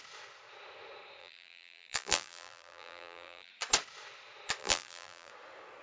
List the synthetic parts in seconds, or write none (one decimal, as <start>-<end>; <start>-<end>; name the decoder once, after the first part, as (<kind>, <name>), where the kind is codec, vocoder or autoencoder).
1.2-3.5 (vocoder, BigVGAN v2); 4.6-5.3